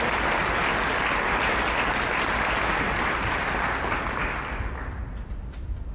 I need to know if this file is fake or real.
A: real